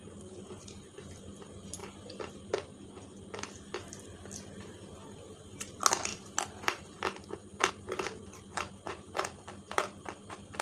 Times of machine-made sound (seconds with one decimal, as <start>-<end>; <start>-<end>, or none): 1.8-2.3; 6.1-7.7